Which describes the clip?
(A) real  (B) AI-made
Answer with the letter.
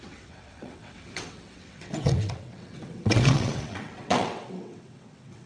B